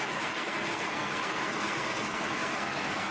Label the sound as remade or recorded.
remade